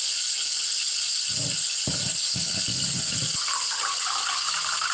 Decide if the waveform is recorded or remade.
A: recorded